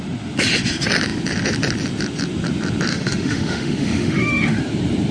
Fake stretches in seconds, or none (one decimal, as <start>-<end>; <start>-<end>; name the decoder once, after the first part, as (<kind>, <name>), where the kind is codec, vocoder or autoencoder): 2.9-4.6 (autoencoder, DAC-VAE)